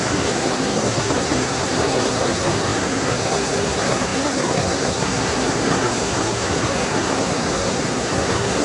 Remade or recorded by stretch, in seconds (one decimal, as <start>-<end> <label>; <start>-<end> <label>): 0.0-8.6 remade